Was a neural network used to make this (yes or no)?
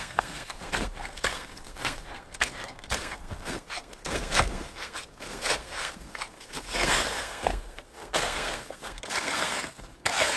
yes